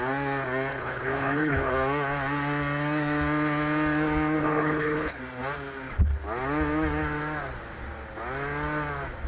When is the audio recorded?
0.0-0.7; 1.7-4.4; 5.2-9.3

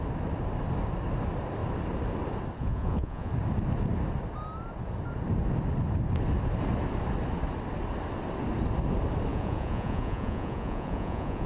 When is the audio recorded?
0.0-2.6; 3.3-9.3

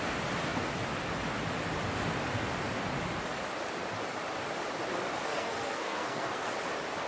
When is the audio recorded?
0.0-5.3; 6.5-7.1

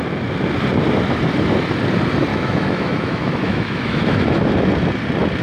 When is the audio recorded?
0.0-2.3; 4.5-5.4